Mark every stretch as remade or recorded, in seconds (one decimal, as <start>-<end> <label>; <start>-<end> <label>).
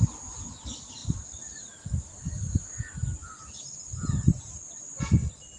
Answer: 0.0-1.0 recorded; 1.0-2.6 remade; 2.6-3.2 recorded; 3.2-5.0 remade; 5.0-5.6 recorded